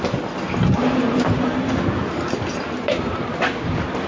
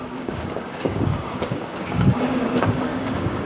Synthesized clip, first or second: second